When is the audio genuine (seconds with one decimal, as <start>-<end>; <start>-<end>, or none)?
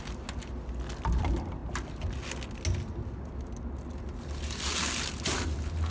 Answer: 0.0-5.9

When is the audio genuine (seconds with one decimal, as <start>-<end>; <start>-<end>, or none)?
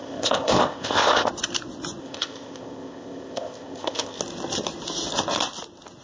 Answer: 1.3-2.0; 4.2-6.0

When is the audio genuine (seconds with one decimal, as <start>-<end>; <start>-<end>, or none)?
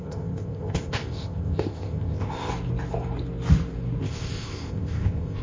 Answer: 2.5-4.0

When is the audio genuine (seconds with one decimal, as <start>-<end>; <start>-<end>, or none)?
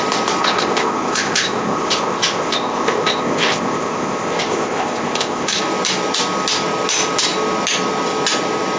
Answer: 0.0-0.4; 5.6-8.8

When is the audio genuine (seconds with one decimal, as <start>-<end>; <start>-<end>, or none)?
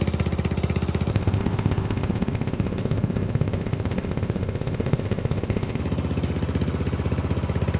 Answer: 0.0-1.1; 5.8-7.8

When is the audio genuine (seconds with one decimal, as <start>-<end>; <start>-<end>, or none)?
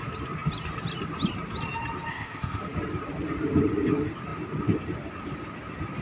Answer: 0.0-2.1; 2.6-6.0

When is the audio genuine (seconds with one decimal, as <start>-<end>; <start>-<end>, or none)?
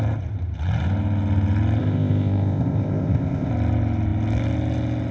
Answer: 0.0-1.8; 3.5-5.1